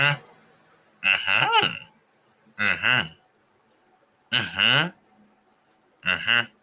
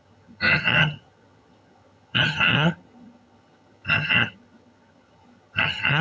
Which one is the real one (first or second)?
first